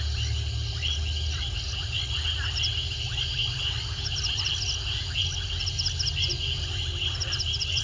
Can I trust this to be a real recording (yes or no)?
yes